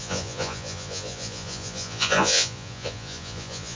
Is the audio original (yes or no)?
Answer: no